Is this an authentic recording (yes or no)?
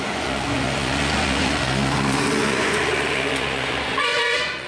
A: no